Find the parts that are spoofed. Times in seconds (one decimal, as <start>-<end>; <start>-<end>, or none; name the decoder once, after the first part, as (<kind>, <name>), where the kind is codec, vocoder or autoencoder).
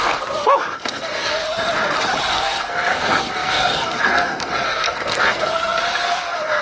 0.0-1.4 (codec, SNAC); 2.3-6.6